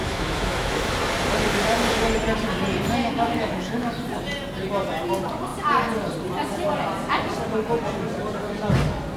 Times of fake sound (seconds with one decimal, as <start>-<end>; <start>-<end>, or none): 0.0-0.9; 3.0-3.9